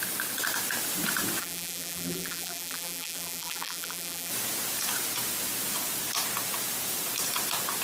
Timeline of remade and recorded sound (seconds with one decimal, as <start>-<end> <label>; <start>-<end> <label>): 0.0-1.4 recorded; 1.4-4.3 remade; 4.3-7.8 recorded